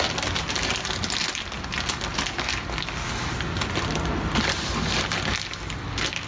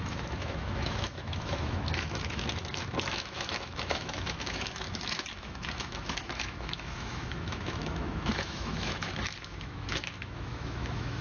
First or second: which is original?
first